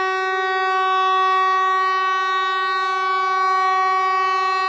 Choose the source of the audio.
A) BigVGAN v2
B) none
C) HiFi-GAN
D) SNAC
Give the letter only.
B